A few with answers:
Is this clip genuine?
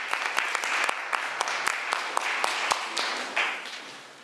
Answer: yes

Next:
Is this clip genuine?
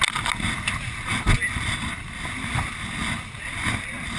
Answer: yes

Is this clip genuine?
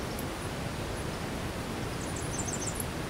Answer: yes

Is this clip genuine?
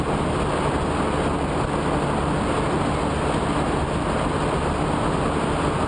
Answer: yes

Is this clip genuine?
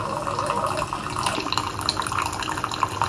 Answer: yes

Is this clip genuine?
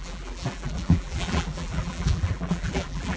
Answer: no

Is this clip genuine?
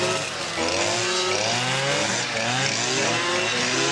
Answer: yes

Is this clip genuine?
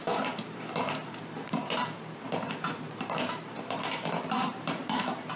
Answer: no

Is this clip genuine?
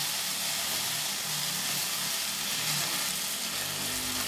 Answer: yes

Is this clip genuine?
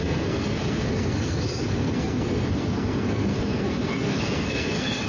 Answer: no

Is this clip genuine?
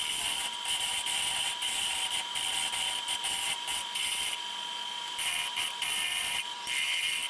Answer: no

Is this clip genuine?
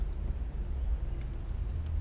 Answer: yes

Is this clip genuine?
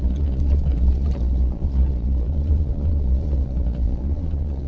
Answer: no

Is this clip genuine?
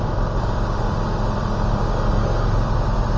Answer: no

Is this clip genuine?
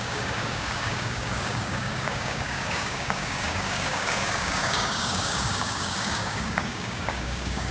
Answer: no